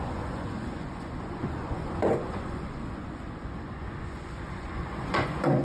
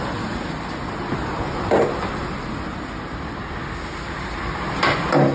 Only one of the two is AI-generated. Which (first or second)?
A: first